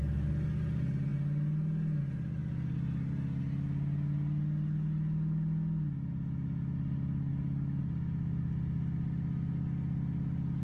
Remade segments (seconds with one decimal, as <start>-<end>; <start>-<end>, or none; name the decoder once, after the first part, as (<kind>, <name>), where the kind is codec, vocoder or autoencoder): none